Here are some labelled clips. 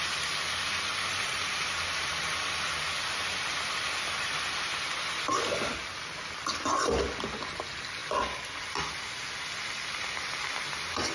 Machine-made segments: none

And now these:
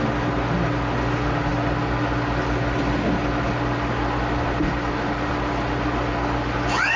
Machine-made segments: none

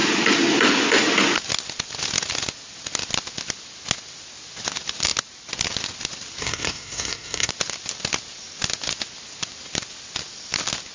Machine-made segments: 6.4-7.5 (codec, SNAC)

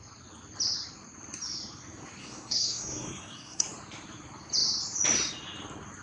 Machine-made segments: 2.2-3.6 (codec, SNAC)

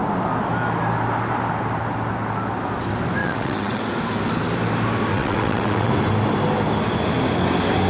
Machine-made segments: 3.2-3.8 (vocoder, WaveNeXt); 5.1-5.9

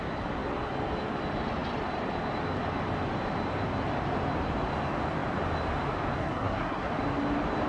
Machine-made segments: 6.2-6.9 (codec, SNAC)

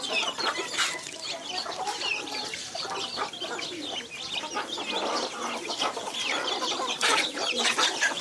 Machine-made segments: 0.0-0.6 (vocoder, BigVGAN v2); 1.7-3.2; 6.7-8.2